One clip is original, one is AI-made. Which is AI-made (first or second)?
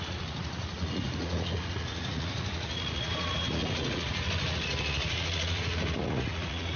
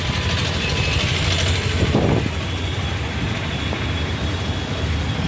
first